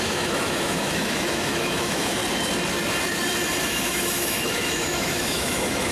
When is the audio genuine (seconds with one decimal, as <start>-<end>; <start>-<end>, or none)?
2.2-3.6